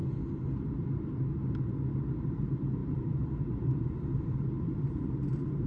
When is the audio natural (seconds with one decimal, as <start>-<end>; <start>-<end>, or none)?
0.0-2.8